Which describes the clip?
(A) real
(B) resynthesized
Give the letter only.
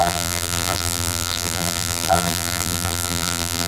B